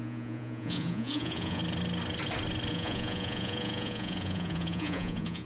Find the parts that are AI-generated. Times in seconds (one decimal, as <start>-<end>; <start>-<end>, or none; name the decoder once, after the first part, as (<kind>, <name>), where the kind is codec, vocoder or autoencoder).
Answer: 0.0-1.6 (vocoder, Vocos); 2.7-5.4